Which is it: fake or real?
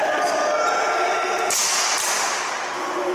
real